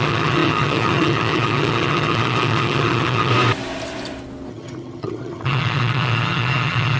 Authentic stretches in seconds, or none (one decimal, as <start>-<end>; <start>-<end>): 3.3-4.5